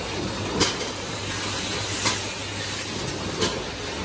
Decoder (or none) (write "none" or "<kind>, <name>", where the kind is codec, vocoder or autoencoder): none